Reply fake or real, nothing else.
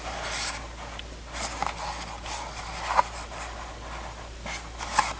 real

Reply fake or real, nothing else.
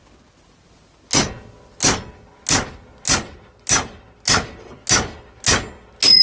real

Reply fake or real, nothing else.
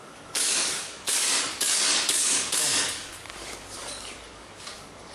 fake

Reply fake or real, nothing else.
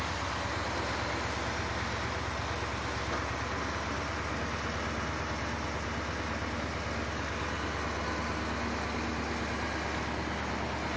real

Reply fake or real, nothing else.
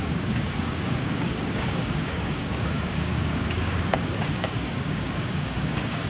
fake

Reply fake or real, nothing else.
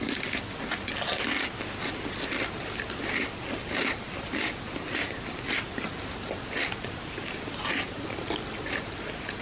real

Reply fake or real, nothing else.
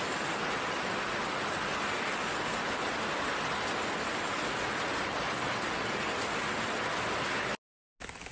real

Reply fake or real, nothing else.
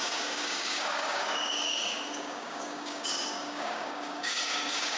fake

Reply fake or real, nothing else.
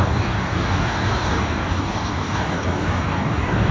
fake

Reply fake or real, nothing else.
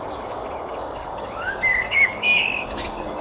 fake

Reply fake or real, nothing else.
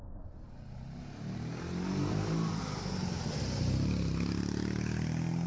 real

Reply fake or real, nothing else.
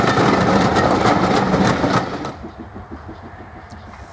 real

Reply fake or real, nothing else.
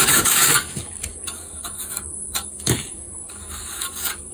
fake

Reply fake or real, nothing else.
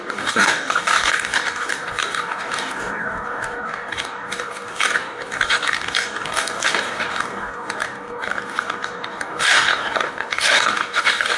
fake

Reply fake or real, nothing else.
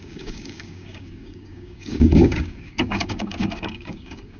fake